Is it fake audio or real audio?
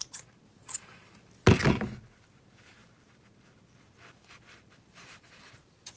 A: real